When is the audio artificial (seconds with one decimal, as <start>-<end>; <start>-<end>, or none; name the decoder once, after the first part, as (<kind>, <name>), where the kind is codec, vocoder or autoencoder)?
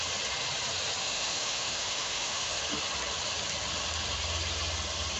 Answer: 1.0-2.6 (autoencoder, DAC-VAE)